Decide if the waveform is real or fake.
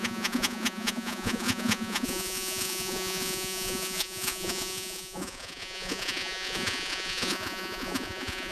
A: fake